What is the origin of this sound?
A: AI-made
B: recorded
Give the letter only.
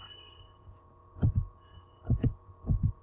A